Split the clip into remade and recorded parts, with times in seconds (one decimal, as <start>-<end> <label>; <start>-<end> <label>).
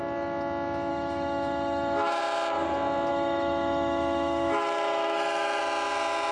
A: 0.0-0.9 recorded; 0.9-2.2 remade; 2.2-3.1 recorded; 3.1-5.6 remade; 5.6-6.3 recorded